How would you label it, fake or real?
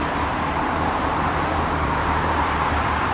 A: fake